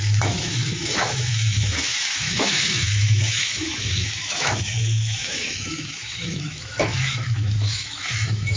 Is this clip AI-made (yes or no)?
yes